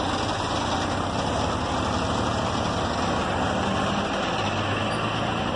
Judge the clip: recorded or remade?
recorded